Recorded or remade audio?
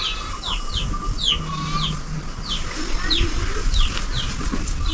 recorded